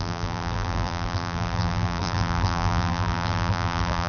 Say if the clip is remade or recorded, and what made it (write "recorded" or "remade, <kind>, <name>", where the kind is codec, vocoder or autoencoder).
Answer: remade, vocoder, BigVGAN v2